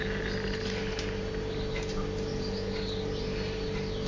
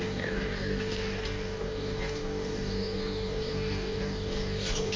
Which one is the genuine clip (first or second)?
first